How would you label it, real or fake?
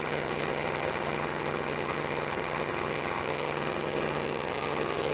fake